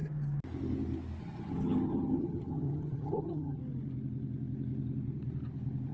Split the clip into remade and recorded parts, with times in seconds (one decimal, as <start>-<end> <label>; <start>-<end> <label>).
0.0-1.2 recorded; 1.2-3.6 remade; 3.6-5.9 recorded